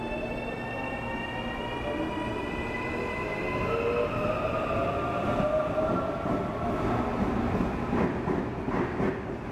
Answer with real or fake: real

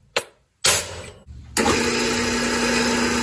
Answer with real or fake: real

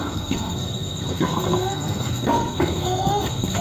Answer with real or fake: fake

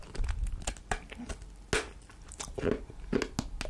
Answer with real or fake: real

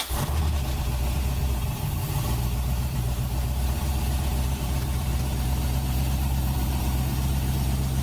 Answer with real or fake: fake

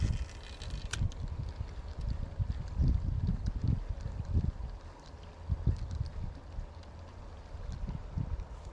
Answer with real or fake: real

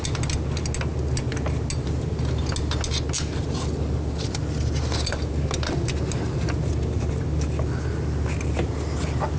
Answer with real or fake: real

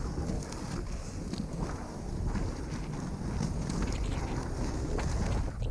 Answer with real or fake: real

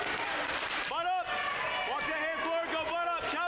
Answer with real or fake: real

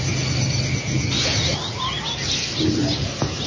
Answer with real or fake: real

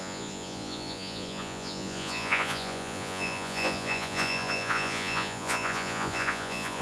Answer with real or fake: fake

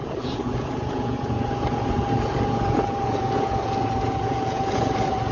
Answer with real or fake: fake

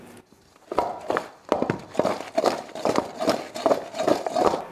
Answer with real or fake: real